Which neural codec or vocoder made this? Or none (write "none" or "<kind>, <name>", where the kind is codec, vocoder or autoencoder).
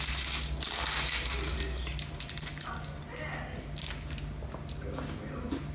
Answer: none